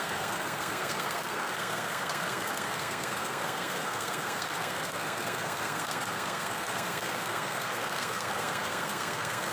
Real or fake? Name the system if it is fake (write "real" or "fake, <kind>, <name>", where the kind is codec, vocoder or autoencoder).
fake, codec, SNAC